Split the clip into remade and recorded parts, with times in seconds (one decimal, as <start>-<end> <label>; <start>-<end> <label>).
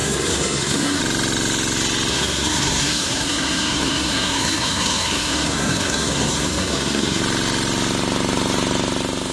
0.0-1.0 remade; 1.0-2.1 recorded; 2.1-7.2 remade; 7.2-9.3 recorded